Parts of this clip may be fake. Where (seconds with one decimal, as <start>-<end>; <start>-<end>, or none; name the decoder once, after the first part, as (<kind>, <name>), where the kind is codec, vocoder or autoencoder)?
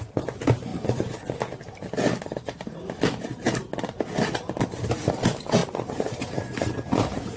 0.0-0.7 (vocoder, BigVGAN v2); 5.1-7.4